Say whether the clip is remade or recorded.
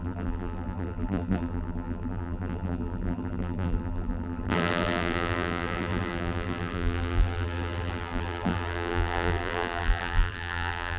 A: remade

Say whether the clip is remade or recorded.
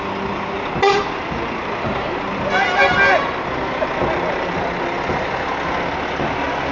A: recorded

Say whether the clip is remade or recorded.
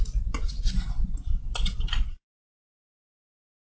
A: recorded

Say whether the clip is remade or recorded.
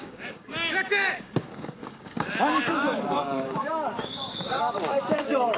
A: remade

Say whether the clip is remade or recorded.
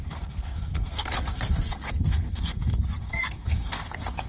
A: remade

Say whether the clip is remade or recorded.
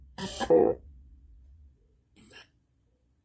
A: remade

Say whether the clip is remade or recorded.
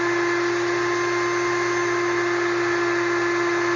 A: recorded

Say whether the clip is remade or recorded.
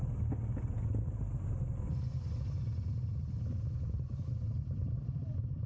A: recorded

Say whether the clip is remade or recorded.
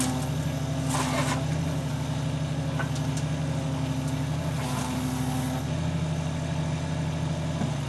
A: recorded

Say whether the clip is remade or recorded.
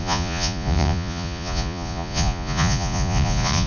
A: remade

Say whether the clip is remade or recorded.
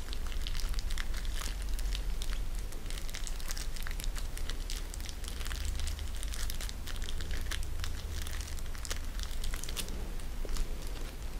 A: recorded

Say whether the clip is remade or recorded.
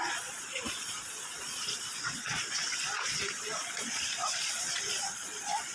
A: remade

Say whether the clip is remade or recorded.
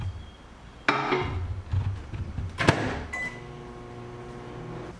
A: recorded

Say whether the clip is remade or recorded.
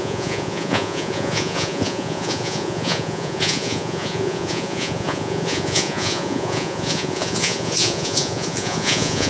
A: remade